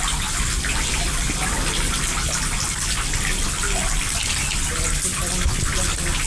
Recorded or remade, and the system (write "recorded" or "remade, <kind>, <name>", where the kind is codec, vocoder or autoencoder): recorded